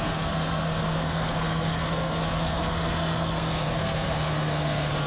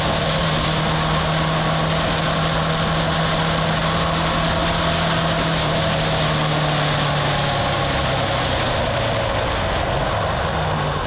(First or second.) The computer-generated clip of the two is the first